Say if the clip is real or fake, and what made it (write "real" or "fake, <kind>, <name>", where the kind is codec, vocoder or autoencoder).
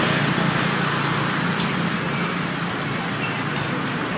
real